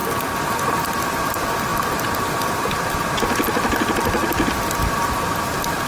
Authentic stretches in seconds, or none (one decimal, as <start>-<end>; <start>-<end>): 1.0-5.9